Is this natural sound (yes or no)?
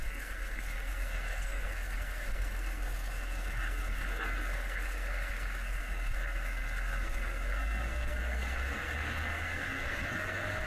no